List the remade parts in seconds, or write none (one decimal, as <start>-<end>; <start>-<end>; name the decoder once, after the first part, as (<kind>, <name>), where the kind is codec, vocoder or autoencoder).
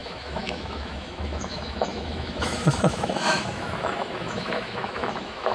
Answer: 0.0-5.5 (autoencoder, DAC-VAE)